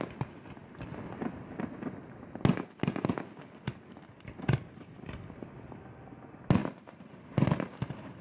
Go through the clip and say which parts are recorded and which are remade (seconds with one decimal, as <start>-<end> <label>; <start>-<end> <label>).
0.0-6.6 recorded; 6.6-7.3 remade; 7.3-8.2 recorded